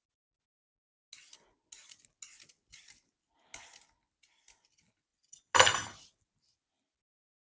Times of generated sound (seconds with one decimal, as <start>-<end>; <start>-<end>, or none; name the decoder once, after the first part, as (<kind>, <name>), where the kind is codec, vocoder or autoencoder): none